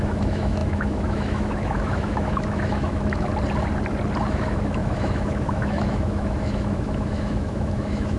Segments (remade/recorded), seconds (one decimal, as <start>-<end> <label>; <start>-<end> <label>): 0.0-3.3 remade; 3.3-4.3 recorded; 4.3-8.2 remade